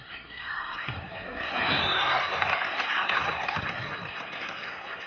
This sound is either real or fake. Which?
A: fake